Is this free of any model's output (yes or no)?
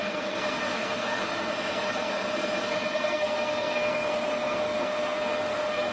no